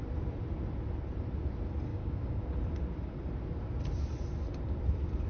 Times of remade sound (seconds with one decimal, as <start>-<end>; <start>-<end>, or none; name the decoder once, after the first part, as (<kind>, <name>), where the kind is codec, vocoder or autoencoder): 1.9-2.5 (codec, DAC)

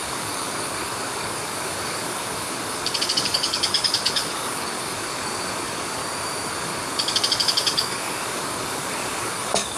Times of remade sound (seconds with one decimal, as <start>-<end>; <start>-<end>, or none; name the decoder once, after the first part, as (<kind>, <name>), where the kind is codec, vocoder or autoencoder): 0.0-6.0 (codec, DAC); 6.5-9.8

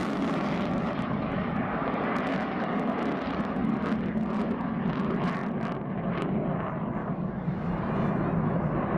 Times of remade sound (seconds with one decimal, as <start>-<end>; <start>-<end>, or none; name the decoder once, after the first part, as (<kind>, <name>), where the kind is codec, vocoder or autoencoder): 0.0-4.7 (codec, DAC); 7.0-7.7

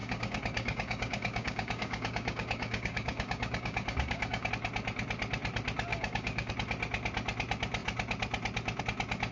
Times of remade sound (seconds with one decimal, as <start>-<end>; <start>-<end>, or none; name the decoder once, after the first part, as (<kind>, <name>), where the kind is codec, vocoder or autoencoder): 0.0-4.5 (codec, DAC); 5.9-6.5

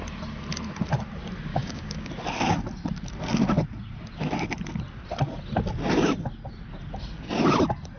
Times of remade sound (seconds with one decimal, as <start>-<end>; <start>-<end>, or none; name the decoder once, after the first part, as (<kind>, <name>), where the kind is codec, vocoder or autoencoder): 1.5-2.1 (codec, DAC)

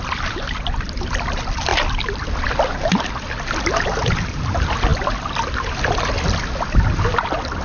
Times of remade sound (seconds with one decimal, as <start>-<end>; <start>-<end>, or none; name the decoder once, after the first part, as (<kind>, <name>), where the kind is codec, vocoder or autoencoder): none

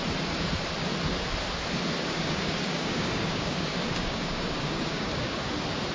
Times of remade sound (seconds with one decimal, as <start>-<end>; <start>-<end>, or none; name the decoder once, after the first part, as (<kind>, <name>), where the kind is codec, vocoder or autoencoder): 2.0-5.4 (codec, DAC)

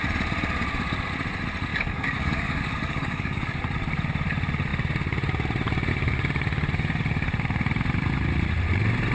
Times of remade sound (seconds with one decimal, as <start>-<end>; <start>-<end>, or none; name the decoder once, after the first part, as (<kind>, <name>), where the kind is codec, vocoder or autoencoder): 1.7-3.6 (codec, DAC)